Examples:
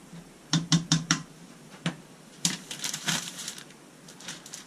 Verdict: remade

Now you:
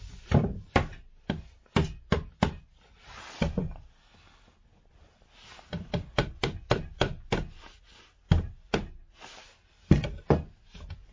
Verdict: recorded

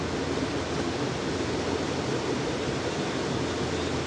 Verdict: recorded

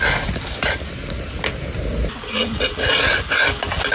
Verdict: recorded